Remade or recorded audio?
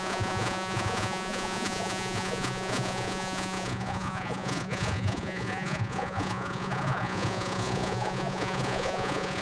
remade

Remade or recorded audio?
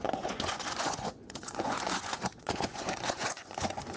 remade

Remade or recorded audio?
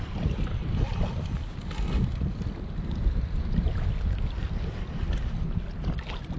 recorded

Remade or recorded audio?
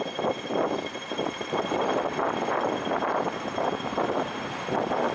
recorded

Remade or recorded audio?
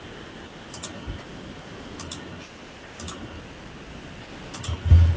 recorded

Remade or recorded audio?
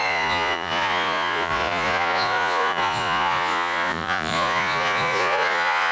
remade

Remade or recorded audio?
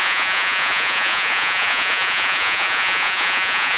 remade